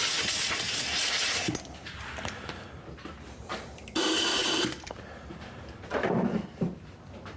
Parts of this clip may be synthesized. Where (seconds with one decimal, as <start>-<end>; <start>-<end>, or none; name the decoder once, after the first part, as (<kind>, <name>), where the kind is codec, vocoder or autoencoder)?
5.9-6.8 (vocoder, BigVGAN v2)